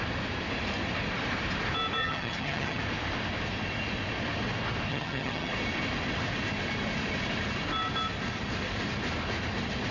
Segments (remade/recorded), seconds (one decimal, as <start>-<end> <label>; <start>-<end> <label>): 0.0-2.0 recorded; 2.0-2.8 remade; 2.8-4.9 recorded; 4.9-5.5 remade; 5.5-9.9 recorded